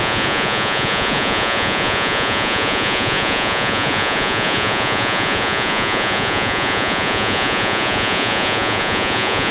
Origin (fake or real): fake